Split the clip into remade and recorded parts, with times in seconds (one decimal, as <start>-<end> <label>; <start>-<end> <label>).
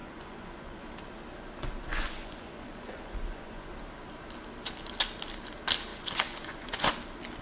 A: 0.0-0.8 remade; 0.8-1.9 recorded; 1.9-3.7 remade; 3.7-5.9 recorded; 5.9-6.9 remade; 6.9-7.4 recorded